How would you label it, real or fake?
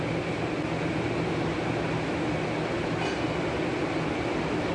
real